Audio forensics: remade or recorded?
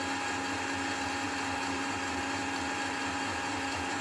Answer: recorded